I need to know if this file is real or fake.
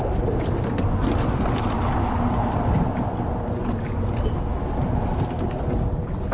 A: real